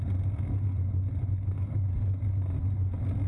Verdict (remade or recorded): recorded